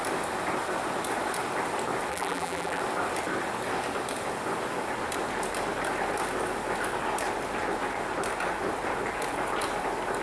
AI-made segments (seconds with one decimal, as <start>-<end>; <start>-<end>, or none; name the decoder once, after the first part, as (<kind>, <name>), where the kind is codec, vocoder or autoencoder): 2.1-2.8 (vocoder, BigVGAN v2)